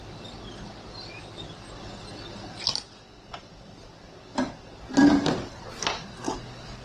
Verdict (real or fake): real